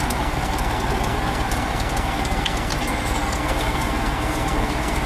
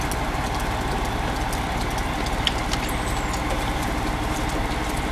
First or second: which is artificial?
first